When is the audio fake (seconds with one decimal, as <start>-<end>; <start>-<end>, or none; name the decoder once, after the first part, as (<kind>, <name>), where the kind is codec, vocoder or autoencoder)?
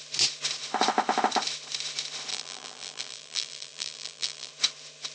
2.3-4.5 (vocoder, BigVGAN v2)